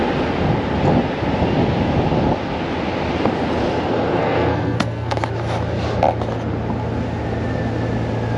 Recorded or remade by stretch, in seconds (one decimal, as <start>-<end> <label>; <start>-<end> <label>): 0.0-4.2 recorded; 4.2-5.2 remade; 5.2-8.4 recorded